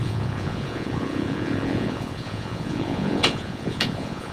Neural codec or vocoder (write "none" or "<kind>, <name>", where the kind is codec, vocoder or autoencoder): vocoder, Vocos